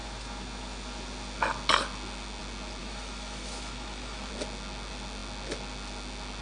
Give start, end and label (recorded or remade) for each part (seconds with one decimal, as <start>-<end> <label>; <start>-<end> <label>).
0.0-2.8 recorded; 2.8-4.3 remade; 4.3-6.4 recorded